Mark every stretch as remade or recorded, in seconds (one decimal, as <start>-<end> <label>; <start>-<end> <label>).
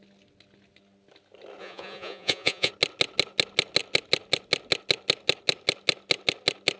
0.0-1.6 recorded; 1.6-2.7 remade; 2.7-6.8 recorded